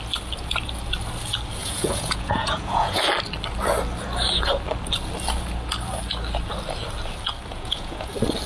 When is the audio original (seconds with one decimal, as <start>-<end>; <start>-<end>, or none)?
0.0-1.6; 3.0-7.5; 8.1-8.5